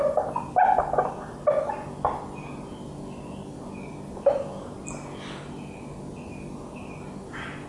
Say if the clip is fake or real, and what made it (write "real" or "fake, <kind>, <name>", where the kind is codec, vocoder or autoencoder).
real